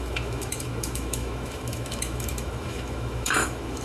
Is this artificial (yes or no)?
yes